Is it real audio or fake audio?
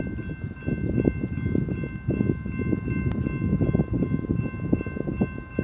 real